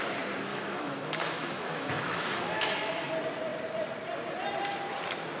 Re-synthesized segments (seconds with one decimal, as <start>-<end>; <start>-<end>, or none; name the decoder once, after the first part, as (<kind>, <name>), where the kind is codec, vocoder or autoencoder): 0.5-3.1 (autoencoder, DAC-VAE)